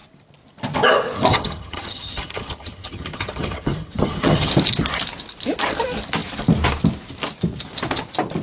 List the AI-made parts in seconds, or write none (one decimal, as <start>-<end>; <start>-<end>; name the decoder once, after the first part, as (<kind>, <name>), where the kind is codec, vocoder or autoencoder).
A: 1.3-4.5 (vocoder, HiFi-GAN)

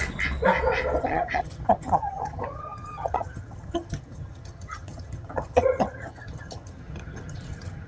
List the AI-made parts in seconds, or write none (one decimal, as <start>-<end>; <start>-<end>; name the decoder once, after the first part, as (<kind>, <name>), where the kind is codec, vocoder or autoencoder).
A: 1.0-7.9 (vocoder, HiFi-GAN)

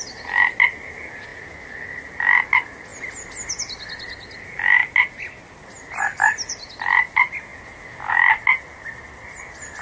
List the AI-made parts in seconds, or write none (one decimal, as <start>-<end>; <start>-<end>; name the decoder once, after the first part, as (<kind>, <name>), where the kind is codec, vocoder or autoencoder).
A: none

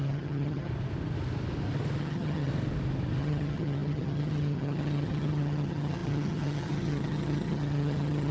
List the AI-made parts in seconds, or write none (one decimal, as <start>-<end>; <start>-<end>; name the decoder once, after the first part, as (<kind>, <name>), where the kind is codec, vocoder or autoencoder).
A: 0.0-0.7 (vocoder, HiFi-GAN); 2.0-2.5; 3.2-8.3